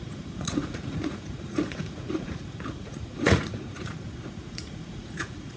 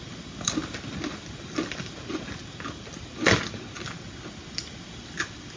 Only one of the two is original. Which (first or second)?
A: second